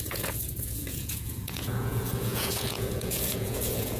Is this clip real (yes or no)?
no